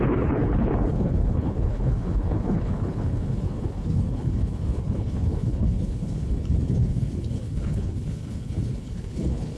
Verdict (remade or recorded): remade